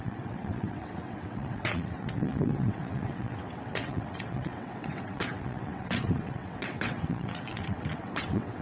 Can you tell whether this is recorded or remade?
remade